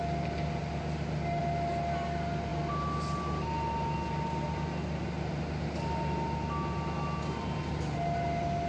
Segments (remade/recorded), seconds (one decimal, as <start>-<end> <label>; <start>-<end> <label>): 0.0-8.7 recorded